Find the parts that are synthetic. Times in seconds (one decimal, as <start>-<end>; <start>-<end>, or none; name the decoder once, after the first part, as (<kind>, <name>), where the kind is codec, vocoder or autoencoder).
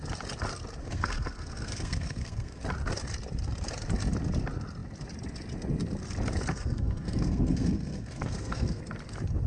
0.8-2.6 (codec, SNAC); 6.5-8.8